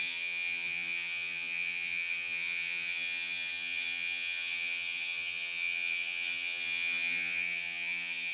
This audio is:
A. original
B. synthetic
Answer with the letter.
B